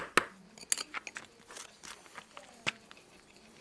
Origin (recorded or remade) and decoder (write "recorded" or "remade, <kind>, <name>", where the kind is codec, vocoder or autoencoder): recorded